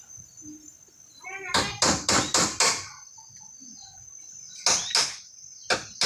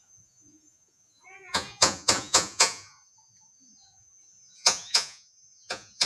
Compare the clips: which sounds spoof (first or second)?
second